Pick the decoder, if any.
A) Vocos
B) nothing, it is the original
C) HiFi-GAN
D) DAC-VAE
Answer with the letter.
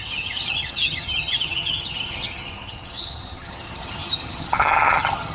C